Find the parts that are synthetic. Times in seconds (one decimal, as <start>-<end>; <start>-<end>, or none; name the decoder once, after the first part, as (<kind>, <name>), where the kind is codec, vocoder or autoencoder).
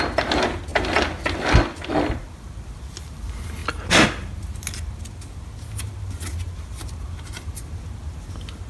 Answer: none